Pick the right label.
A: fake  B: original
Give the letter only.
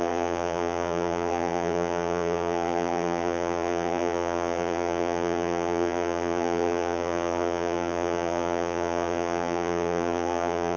A